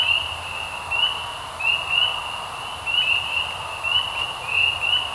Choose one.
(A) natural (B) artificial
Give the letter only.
A